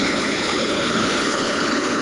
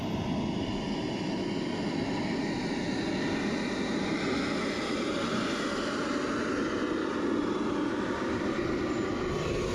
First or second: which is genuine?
second